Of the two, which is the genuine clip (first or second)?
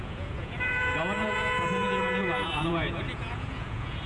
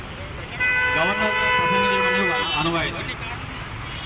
second